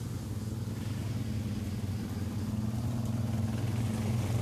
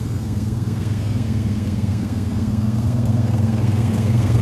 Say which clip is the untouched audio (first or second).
first